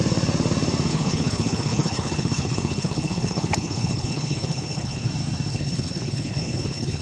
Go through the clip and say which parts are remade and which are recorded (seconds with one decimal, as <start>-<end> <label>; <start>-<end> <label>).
0.0-0.9 recorded; 0.9-5.1 remade; 5.1-5.5 recorded; 5.5-7.0 remade